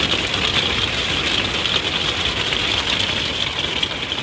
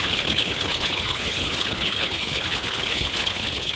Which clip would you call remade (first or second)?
second